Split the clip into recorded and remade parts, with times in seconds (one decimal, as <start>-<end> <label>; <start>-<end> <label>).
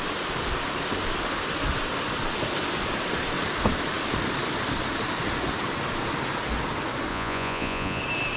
0.0-7.1 recorded; 7.1-8.0 remade; 8.0-8.4 recorded